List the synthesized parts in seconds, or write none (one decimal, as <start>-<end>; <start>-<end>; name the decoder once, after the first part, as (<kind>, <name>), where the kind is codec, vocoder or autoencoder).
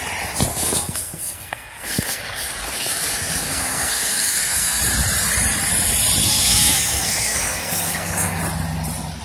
0.5-4.8 (codec, SNAC); 6.2-8.4